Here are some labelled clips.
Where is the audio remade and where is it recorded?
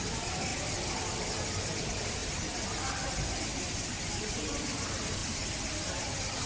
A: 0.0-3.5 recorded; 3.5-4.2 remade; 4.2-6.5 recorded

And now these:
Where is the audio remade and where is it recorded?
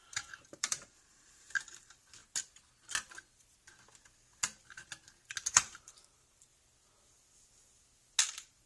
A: 0.0-2.2 remade; 2.2-5.5 recorded; 5.5-6.5 remade; 6.5-8.2 recorded; 8.2-8.7 remade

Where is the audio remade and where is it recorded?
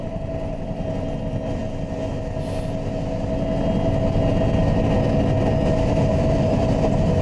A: 0.0-1.6 remade; 1.6-5.9 recorded; 5.9-7.2 remade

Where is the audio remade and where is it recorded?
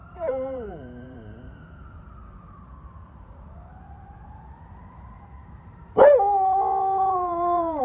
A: 0.0-3.8 remade; 3.8-5.4 recorded; 5.4-7.8 remade